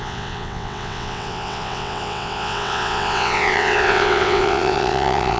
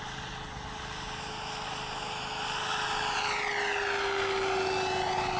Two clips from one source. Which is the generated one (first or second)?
first